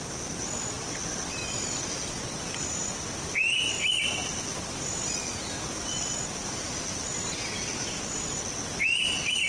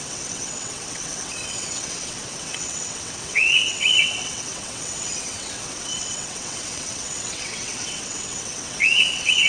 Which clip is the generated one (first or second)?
second